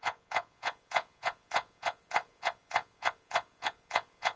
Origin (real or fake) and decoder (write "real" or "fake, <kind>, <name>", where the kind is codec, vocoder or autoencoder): fake, vocoder, Vocos